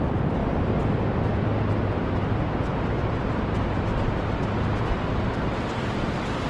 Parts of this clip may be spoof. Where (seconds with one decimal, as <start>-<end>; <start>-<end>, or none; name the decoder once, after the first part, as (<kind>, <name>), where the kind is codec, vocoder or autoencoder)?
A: none